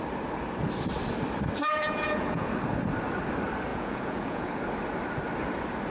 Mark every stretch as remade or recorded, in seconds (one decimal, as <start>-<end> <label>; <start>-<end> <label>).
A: 0.0-1.6 recorded; 1.6-2.5 remade; 2.5-3.7 recorded; 3.7-4.6 remade; 4.6-5.9 recorded